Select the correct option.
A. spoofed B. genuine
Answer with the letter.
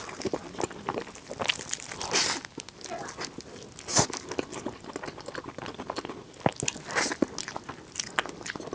B